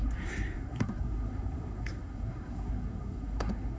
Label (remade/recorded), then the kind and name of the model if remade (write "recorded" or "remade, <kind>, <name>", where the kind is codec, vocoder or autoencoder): remade, codec, SNAC